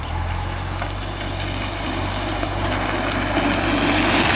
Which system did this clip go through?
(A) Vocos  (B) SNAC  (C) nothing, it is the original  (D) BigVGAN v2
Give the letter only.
C